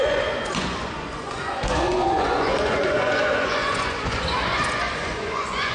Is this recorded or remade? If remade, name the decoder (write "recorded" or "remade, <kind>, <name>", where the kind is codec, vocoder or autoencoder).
remade, vocoder, Vocos